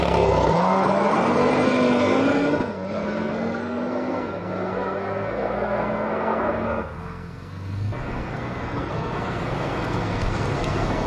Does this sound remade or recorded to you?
remade